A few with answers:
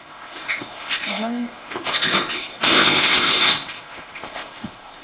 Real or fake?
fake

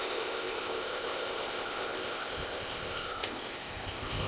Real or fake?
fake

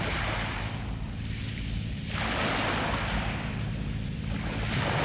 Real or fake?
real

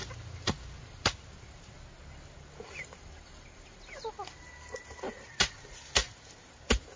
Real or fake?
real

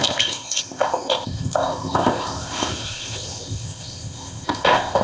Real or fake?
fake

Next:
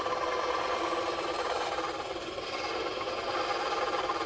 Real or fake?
real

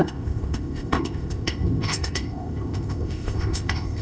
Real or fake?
fake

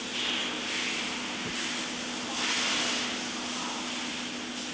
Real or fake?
real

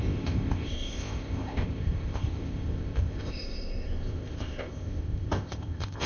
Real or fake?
fake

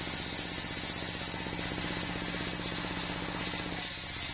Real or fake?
real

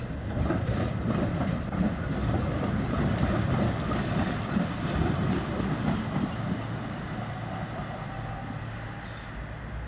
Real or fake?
real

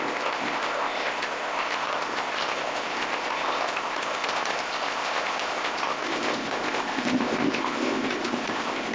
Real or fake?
fake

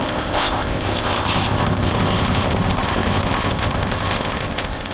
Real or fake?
fake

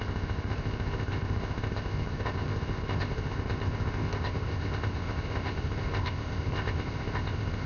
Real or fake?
fake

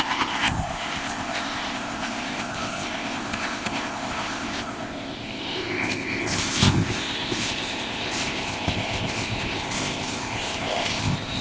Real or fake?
fake